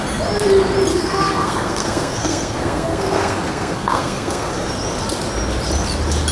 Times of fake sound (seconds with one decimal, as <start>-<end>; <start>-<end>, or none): 0.9-4.7